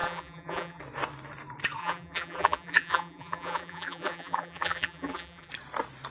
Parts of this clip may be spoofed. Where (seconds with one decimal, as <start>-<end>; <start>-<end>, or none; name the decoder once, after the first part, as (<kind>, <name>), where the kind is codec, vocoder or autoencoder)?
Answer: 0.0-0.8 (vocoder, BigVGAN v2); 1.8-5.5